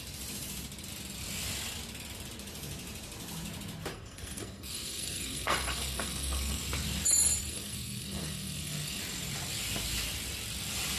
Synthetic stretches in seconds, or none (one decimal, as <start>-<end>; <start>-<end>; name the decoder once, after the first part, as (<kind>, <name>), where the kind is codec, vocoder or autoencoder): 3.9-6.6 (codec, SNAC); 7.4-9.0